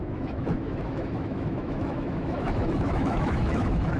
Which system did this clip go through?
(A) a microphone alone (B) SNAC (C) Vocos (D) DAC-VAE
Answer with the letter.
D